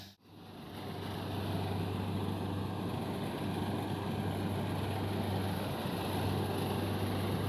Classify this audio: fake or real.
real